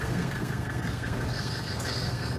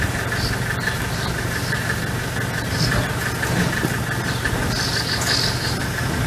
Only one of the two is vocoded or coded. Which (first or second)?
first